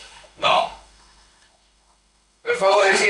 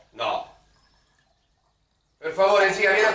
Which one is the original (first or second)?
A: second